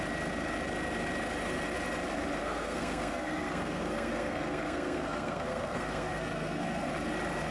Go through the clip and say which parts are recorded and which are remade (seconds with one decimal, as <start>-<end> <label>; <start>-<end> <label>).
0.0-2.4 recorded; 2.4-6.9 remade; 6.9-7.5 recorded